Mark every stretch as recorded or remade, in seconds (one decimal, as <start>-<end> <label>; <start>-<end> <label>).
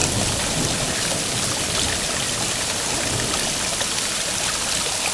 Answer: 0.0-5.1 recorded